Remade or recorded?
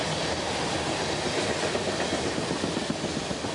recorded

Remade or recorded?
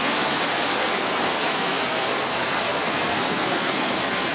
remade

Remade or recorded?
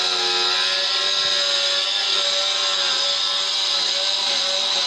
recorded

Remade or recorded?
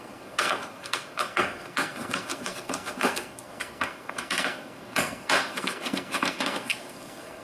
remade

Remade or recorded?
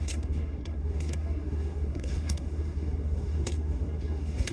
remade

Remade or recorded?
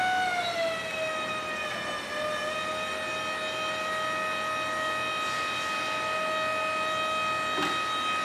recorded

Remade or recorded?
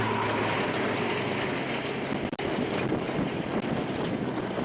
recorded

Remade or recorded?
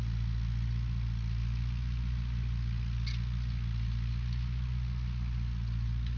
recorded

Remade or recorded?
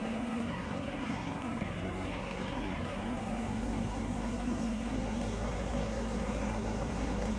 remade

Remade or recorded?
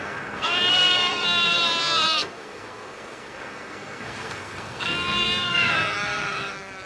remade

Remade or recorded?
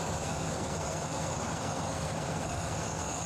remade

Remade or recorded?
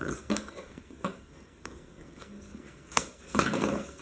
remade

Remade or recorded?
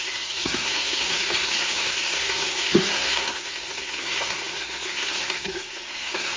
remade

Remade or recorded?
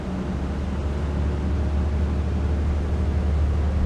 recorded